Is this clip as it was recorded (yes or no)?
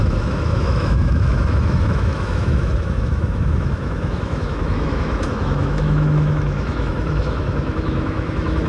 no